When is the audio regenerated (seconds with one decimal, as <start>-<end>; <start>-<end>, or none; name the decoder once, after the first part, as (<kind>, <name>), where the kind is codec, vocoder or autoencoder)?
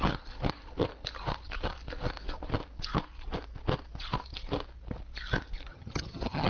5.7-6.5 (vocoder, HiFi-GAN)